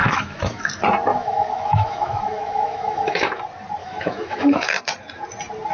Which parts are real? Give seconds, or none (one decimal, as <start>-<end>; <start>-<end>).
0.7-1.1; 3.4-3.8; 4.8-5.7